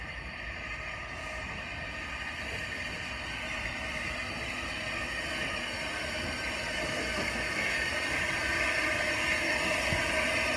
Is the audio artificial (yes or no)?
no